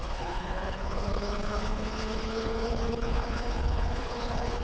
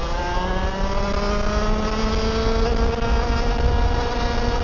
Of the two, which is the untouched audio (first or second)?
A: second